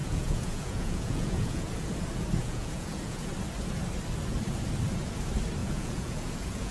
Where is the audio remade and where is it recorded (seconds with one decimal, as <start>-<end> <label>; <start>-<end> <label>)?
0.0-1.7 remade; 1.7-2.4 recorded; 2.4-3.3 remade; 3.3-5.6 recorded; 5.6-6.7 remade